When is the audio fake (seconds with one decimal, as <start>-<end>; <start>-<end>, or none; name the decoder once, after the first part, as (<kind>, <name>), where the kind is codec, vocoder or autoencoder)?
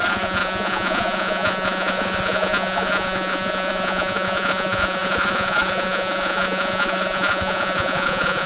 0.0-8.5 (vocoder, Vocos)